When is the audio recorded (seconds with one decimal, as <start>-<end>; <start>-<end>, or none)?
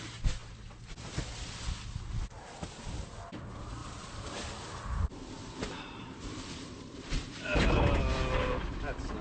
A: 0.0-3.8; 8.0-9.2